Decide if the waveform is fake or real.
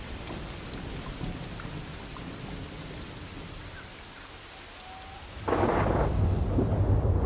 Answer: real